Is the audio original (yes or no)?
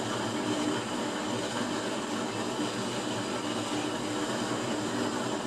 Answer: yes